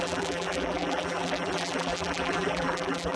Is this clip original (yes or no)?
no